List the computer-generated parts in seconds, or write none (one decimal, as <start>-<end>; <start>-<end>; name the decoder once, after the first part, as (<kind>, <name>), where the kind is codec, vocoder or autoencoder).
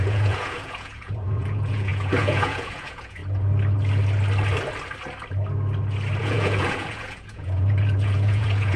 0.0-3.2 (vocoder, Vocos); 6.2-8.8